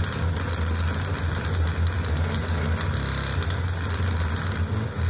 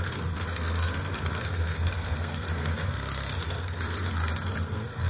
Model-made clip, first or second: second